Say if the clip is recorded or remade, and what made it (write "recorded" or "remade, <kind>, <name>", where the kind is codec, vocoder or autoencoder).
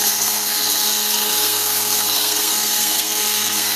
remade, codec, SNAC